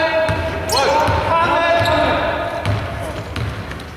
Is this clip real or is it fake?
real